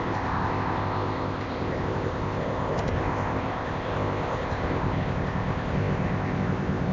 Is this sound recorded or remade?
remade